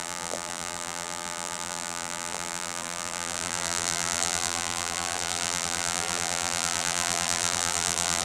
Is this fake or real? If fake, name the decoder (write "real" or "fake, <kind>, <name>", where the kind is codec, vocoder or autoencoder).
fake, vocoder, BigVGAN v2